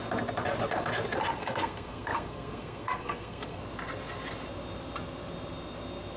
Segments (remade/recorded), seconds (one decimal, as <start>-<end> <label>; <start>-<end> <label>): 0.0-1.4 recorded; 1.4-3.6 remade; 3.6-6.2 recorded